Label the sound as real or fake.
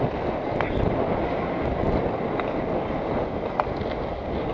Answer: real